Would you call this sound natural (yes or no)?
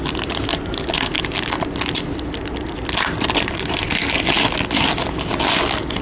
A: yes